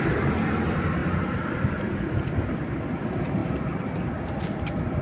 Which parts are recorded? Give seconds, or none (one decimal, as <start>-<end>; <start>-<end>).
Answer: none